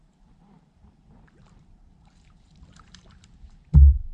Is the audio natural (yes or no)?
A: no